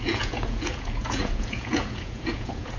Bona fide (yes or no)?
no